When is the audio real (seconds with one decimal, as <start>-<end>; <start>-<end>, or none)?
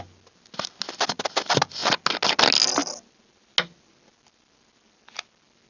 0.0-5.7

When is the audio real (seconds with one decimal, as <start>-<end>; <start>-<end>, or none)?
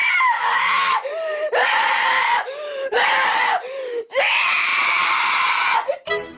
none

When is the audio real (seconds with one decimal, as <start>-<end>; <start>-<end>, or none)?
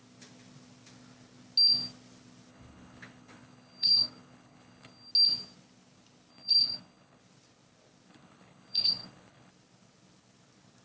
0.0-2.5; 5.1-6.3; 7.2-8.1; 9.5-10.8